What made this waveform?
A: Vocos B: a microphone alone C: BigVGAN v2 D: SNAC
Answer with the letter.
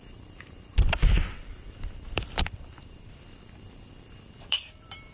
C